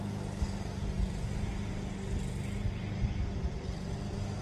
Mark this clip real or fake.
real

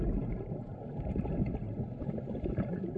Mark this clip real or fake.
fake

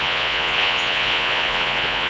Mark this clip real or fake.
fake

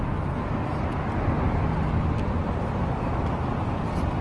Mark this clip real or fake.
real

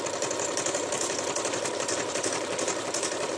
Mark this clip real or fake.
fake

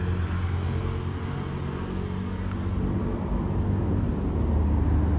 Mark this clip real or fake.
real